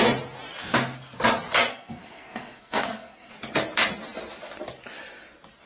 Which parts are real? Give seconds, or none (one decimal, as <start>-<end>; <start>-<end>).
0.0-1.7; 3.3-5.7